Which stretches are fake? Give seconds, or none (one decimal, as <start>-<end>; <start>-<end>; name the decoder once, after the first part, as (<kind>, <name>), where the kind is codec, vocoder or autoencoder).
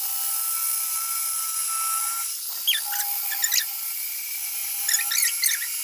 none